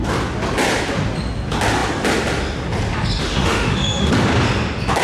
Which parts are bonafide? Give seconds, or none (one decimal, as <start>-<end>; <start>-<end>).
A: 0.0-3.2; 4.1-5.0